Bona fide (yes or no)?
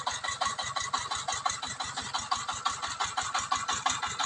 yes